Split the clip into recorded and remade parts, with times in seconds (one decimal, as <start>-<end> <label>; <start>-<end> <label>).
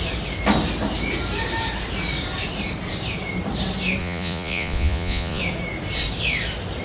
0.0-4.0 recorded; 4.0-5.4 remade; 5.4-6.8 recorded